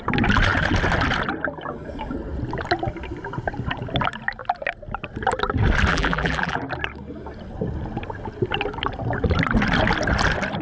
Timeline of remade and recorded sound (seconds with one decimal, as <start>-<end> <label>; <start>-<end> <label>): 0.0-5.9 recorded; 5.9-6.6 remade; 6.6-10.6 recorded